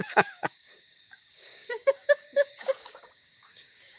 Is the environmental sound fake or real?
fake